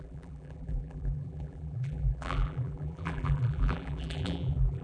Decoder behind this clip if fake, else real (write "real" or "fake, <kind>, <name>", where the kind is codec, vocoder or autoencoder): fake, vocoder, BigVGAN v2